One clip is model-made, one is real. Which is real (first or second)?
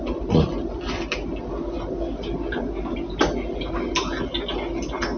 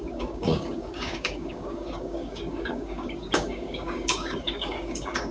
first